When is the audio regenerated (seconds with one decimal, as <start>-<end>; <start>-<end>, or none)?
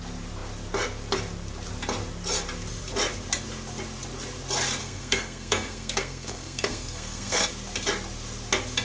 4.8-7.5